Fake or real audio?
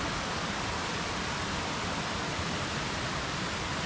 real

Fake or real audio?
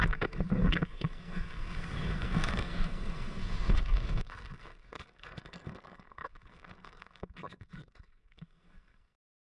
fake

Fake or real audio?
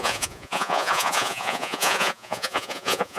fake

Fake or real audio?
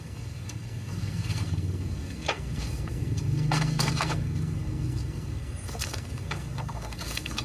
fake